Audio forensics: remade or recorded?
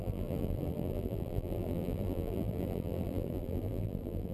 remade